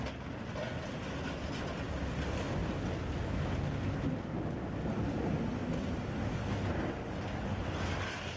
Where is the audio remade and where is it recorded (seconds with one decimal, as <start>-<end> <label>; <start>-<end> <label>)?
0.0-8.4 recorded